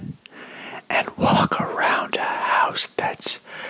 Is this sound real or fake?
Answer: real